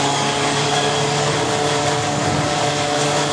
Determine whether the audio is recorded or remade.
remade